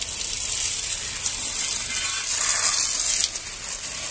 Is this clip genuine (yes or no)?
yes